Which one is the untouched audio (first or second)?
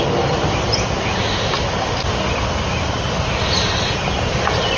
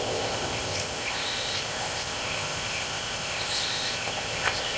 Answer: first